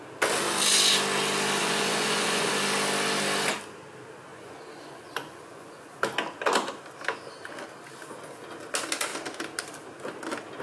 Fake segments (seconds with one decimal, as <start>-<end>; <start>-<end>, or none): 1.6-2.5; 4.3-6.0